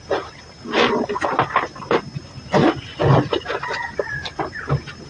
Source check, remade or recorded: recorded